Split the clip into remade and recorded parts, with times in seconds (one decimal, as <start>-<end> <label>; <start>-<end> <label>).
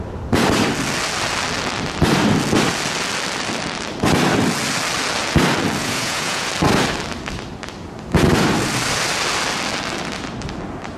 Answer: 0.0-5.8 recorded; 5.8-6.5 remade; 6.5-11.0 recorded